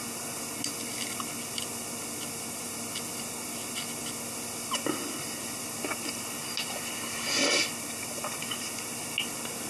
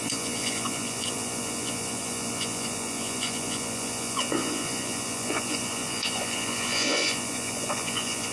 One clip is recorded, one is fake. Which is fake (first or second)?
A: second